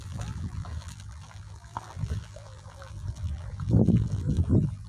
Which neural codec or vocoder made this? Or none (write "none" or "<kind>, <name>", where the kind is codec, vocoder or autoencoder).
vocoder, BigVGAN v2